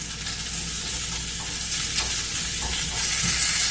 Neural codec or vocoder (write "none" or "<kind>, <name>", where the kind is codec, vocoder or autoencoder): none